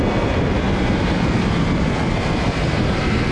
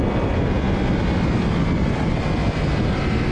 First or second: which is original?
second